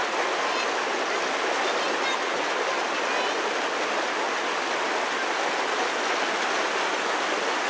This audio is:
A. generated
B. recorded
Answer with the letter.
B